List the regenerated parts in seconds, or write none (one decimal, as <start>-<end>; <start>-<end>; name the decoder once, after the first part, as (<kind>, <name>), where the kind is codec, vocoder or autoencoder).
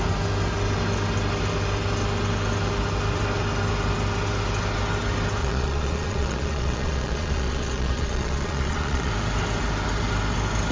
5.4-9.1 (vocoder, Vocos)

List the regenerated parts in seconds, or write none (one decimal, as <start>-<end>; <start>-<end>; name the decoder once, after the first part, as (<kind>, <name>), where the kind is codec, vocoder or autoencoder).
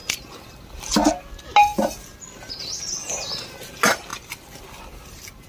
none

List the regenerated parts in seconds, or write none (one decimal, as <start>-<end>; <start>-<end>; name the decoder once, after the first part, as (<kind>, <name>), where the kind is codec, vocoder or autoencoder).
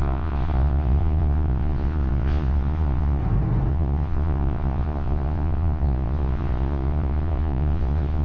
0.0-3.2 (vocoder, Vocos); 3.7-8.2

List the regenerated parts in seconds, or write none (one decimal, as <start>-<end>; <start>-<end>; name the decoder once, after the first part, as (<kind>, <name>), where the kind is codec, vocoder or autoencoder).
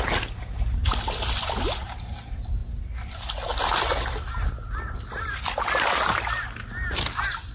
none